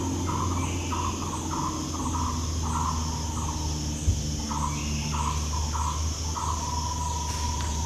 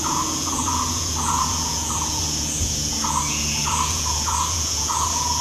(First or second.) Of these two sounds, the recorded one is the first